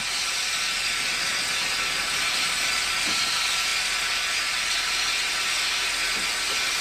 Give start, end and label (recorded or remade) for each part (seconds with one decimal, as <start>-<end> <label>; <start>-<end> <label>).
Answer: 0.0-6.8 recorded